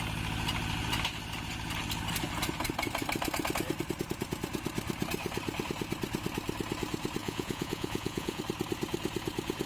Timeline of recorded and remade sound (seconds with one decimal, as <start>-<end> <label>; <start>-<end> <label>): 0.0-7.2 recorded; 7.2-8.4 remade; 8.4-9.7 recorded